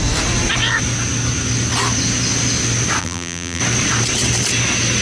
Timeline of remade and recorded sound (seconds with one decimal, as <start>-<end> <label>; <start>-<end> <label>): 0.0-3.0 recorded; 3.0-3.6 remade; 3.6-5.0 recorded